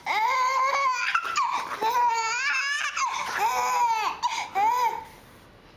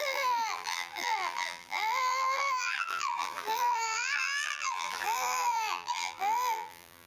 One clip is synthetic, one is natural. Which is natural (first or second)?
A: first